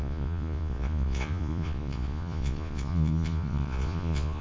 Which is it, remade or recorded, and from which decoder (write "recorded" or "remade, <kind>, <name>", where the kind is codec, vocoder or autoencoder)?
remade, vocoder, Vocos